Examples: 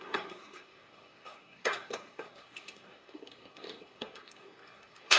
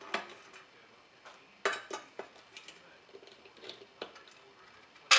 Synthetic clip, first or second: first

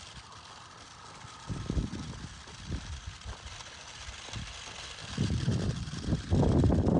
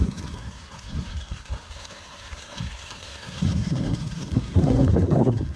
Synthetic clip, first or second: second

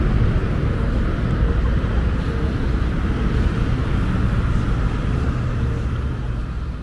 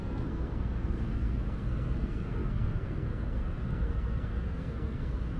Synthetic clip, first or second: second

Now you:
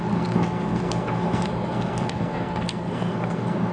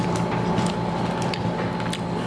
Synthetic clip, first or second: first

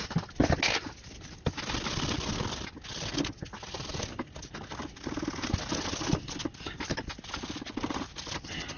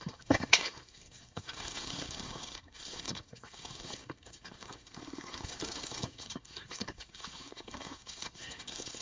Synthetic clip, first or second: second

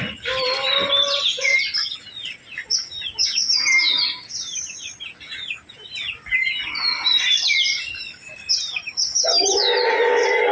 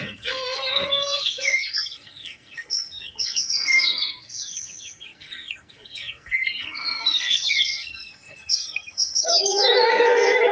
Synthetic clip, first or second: second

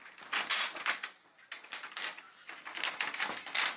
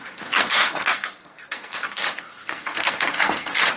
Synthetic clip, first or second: second